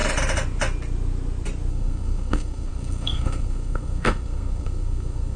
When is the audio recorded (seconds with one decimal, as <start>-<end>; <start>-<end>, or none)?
0.0-1.7